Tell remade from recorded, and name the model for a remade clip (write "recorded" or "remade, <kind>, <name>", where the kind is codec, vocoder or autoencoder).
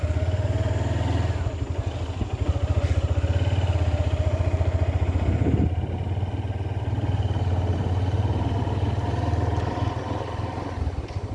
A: recorded